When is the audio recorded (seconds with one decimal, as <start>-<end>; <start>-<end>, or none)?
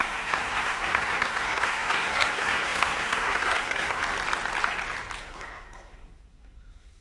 4.0-5.2